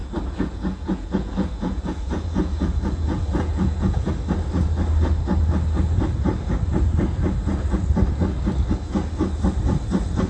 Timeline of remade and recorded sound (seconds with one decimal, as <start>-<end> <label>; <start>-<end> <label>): 0.0-4.1 remade; 4.1-10.3 recorded